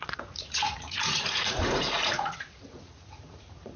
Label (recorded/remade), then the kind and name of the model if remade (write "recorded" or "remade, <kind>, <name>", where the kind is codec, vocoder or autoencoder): remade, vocoder, Vocos